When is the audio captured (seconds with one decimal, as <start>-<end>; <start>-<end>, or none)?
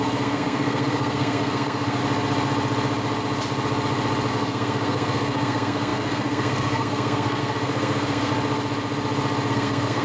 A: 2.0-4.3; 8.3-9.5